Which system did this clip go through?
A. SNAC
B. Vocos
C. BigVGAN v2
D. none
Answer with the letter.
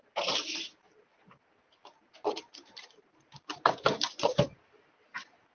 C